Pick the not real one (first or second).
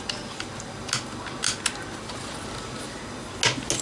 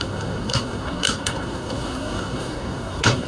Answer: second